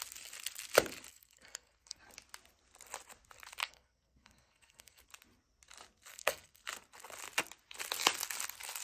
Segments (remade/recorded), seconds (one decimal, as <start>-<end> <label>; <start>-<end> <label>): 0.0-1.1 recorded; 1.1-2.0 remade; 2.0-3.6 recorded; 3.6-5.0 remade; 5.0-6.1 recorded; 6.1-6.6 remade; 6.6-8.8 recorded